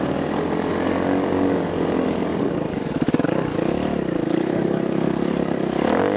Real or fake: fake